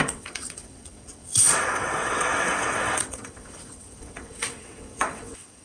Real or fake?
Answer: fake